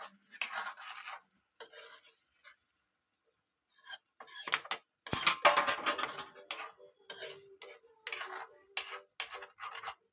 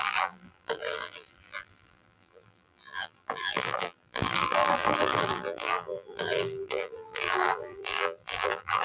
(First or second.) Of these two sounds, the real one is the first